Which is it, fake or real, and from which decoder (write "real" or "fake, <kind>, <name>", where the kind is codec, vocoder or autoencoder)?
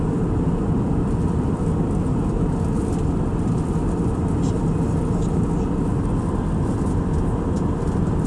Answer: real